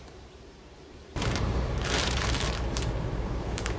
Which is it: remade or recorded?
remade